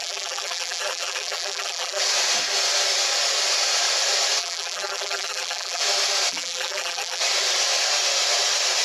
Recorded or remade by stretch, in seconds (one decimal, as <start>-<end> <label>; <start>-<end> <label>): 0.0-2.0 remade; 2.0-4.4 recorded; 4.4-5.8 remade; 5.8-6.3 recorded; 6.3-7.2 remade; 7.2-8.8 recorded